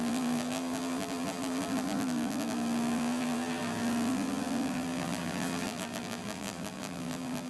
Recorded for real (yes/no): no